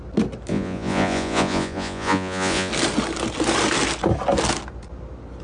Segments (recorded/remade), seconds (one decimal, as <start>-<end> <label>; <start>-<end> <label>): 0.0-0.5 recorded; 0.5-2.7 remade; 2.7-5.4 recorded

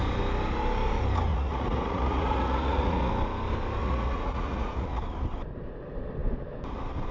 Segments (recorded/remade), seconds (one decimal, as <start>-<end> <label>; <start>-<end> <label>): 0.0-1.3 recorded; 1.3-3.1 remade; 3.1-3.8 recorded; 3.8-5.0 remade; 5.0-7.1 recorded

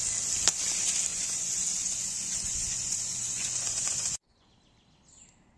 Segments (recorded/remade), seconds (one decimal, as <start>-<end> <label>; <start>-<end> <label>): 0.0-1.1 recorded; 1.1-4.5 remade; 4.5-5.6 recorded

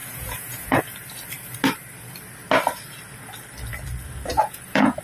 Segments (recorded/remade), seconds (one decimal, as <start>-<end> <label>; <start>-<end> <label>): 0.0-0.8 remade; 0.8-4.3 recorded; 4.3-5.0 remade